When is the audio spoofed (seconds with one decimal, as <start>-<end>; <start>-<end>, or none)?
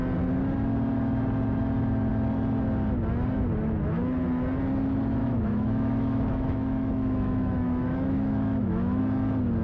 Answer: 5.2-9.0